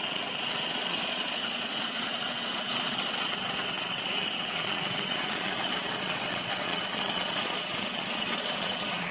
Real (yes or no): no